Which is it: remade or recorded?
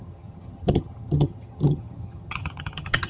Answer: remade